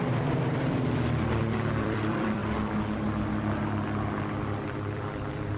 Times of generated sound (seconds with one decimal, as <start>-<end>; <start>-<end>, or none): 0.0-2.4; 4.4-5.6